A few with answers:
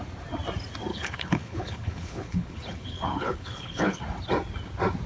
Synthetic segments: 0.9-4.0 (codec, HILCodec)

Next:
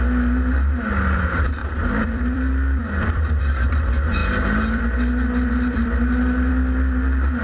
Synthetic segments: 1.6-3.4 (vocoder, BigVGAN v2); 4.2-6.5

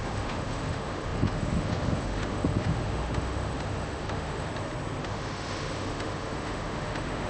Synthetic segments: 0.0-4.5 (autoencoder, DAC-VAE); 5.0-7.3

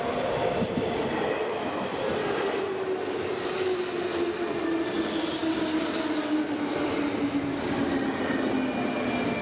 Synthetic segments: 1.4-2.0 (autoencoder, DAC-VAE)

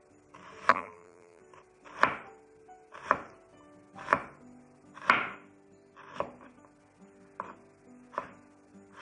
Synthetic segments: 0.7-1.4 (vocoder, BigVGAN v2)

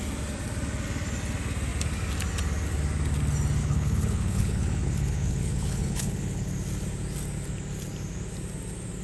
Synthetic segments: 3.6-6.5 (codec, HILCodec)

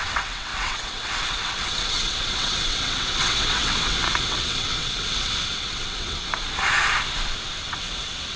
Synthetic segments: 0.0-6.3 (vocoder, WaveNeXt); 7.7-8.4

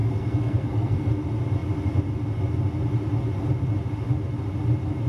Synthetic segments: 0.0-1.1 (codec, SNAC)